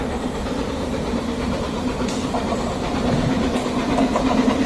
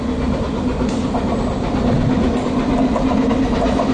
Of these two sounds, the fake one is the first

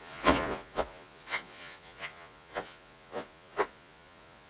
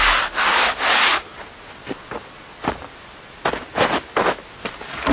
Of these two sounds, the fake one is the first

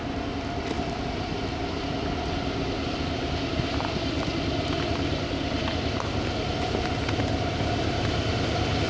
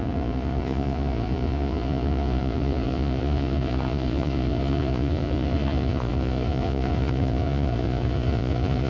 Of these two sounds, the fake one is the second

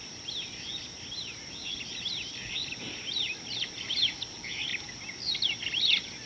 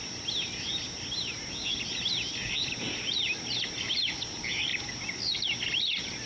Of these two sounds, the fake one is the first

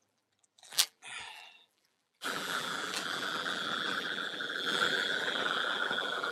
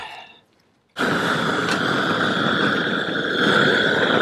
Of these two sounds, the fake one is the first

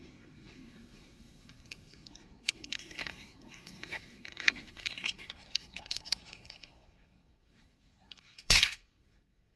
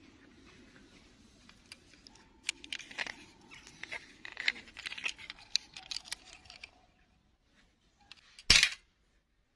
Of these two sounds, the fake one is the first